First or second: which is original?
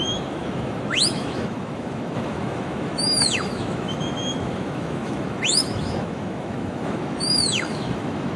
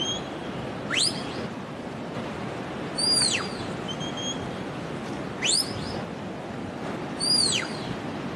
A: second